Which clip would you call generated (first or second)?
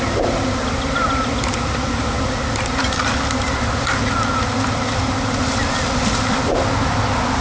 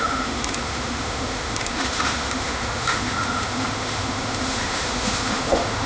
second